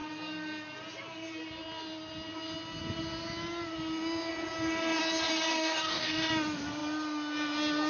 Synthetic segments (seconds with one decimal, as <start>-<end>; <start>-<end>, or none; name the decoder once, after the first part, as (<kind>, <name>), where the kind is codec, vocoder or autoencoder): 5.5-6.3 (codec, DAC)